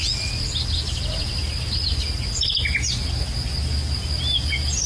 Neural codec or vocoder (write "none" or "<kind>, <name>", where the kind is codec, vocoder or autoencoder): none